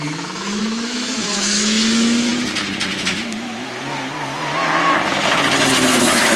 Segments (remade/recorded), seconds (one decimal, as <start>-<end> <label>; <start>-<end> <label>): 0.0-2.3 remade; 2.3-3.1 recorded; 3.1-3.5 remade; 3.5-5.9 recorded; 5.9-6.4 remade